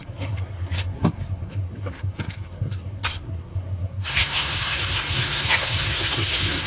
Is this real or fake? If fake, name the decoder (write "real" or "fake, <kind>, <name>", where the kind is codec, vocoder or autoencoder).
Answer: fake, codec, SNAC